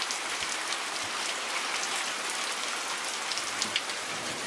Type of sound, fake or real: real